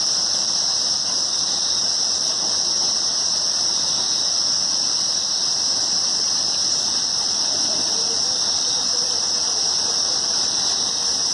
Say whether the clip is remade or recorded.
remade